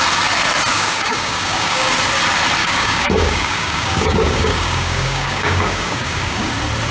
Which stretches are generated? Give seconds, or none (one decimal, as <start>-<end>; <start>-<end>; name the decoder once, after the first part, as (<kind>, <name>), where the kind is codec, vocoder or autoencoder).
0.7-1.9 (codec, DAC); 2.6-6.5